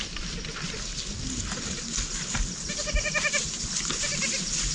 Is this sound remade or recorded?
recorded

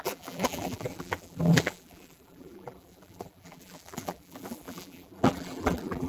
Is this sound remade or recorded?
remade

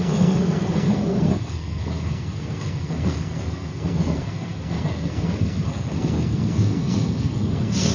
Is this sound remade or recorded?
remade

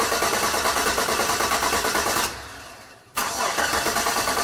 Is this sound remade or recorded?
remade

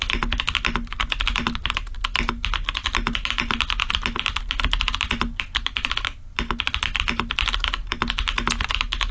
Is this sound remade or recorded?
recorded